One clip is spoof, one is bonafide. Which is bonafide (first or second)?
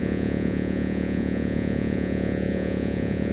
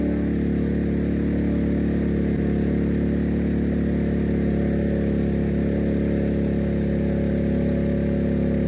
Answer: second